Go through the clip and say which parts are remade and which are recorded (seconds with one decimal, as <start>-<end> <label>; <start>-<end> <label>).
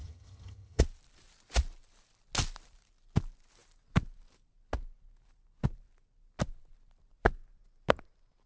0.0-0.8 remade; 0.8-8.5 recorded